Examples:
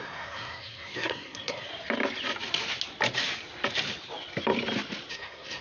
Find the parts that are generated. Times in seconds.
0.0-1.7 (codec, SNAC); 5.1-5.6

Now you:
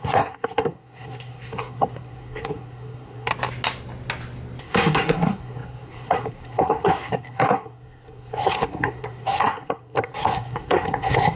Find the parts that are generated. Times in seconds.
0.0-3.3 (codec, SNAC); 4.6-11.4